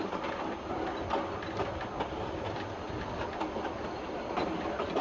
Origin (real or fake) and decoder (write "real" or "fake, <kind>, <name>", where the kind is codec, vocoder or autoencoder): real